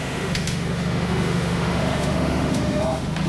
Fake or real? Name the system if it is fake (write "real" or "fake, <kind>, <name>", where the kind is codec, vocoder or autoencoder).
fake, autoencoder, DAC-VAE